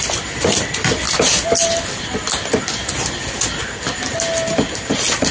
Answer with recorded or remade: recorded